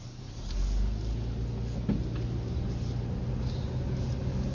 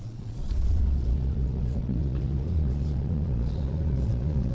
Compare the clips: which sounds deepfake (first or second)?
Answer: second